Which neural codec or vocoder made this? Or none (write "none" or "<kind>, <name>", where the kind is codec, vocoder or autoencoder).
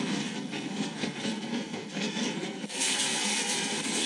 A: codec, SNAC